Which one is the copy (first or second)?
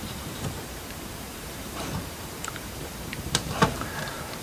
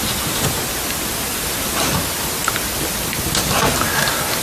first